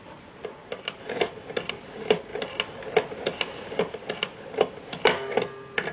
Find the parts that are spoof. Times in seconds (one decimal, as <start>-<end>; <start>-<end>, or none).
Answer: none